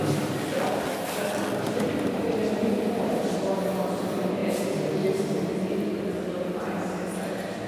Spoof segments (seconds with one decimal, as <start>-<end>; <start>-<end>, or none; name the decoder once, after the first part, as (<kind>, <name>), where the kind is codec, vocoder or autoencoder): none